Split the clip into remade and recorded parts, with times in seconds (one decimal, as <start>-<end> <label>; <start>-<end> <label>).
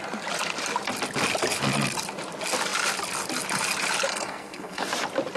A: 0.0-4.1 recorded; 4.1-4.9 remade; 4.9-5.4 recorded